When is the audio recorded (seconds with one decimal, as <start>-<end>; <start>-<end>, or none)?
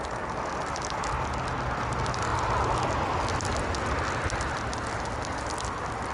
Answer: 0.0-6.1